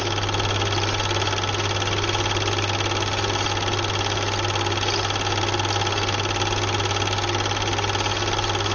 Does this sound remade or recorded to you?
recorded